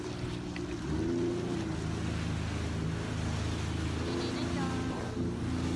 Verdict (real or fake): real